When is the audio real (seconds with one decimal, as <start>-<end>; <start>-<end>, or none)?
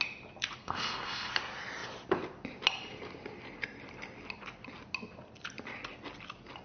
0.0-0.6; 1.3-6.6